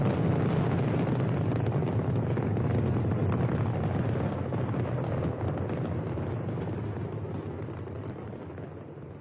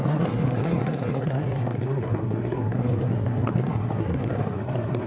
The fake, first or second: second